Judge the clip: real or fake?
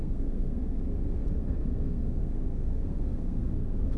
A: fake